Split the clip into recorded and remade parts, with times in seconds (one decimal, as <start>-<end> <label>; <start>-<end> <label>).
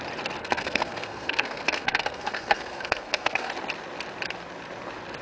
0.0-0.4 recorded; 0.4-3.5 remade; 3.5-5.2 recorded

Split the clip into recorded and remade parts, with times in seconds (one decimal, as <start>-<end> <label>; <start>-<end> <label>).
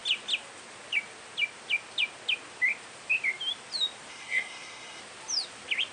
0.0-4.1 recorded; 4.1-5.0 remade; 5.0-5.9 recorded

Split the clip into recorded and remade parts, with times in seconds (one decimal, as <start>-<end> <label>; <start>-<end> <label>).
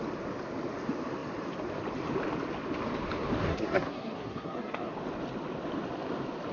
0.0-3.5 recorded; 3.5-4.9 remade; 4.9-6.5 recorded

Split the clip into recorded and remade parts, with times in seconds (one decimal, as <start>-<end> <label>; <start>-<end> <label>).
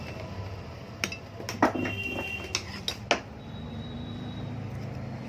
0.0-5.3 recorded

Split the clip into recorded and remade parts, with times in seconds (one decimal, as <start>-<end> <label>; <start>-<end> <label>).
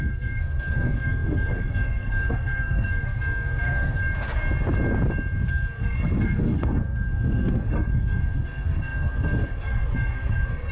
0.0-4.0 remade; 4.0-5.5 recorded; 5.5-10.7 remade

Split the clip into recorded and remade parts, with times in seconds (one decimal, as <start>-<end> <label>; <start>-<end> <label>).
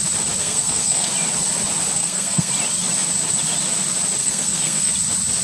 0.0-0.4 recorded; 0.4-1.1 remade; 1.1-2.0 recorded; 2.0-2.5 remade; 2.5-4.2 recorded; 4.2-4.9 remade; 4.9-5.4 recorded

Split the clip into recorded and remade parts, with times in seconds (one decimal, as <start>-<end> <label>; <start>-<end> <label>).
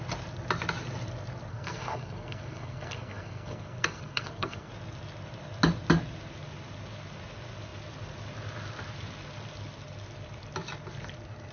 0.0-1.5 recorded; 1.5-4.7 remade; 4.7-11.5 recorded